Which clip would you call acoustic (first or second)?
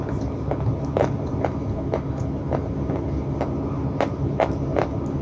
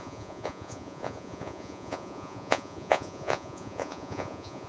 first